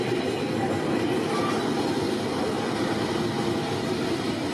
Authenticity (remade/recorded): recorded